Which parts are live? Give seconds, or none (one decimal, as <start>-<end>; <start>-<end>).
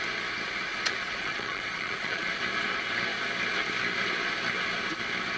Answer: 0.0-0.7; 2.3-5.4